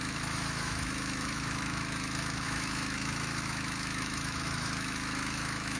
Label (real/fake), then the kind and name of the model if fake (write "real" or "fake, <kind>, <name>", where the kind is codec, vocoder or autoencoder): fake, autoencoder, DAC-VAE